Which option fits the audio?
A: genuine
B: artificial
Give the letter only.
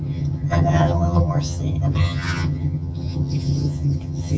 B